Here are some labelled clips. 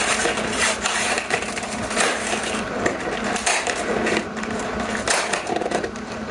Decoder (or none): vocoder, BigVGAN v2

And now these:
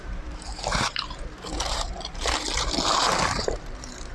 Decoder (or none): vocoder, BigVGAN v2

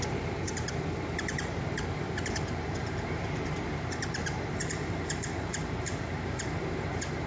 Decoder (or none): vocoder, BigVGAN v2